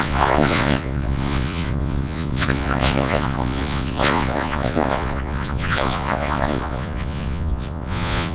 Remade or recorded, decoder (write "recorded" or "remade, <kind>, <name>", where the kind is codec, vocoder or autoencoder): remade, vocoder, Vocos